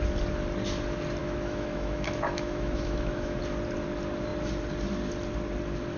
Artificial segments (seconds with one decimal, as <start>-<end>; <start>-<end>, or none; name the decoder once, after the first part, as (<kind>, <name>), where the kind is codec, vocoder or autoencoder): 1.2-3.4 (autoencoder, DAC-VAE)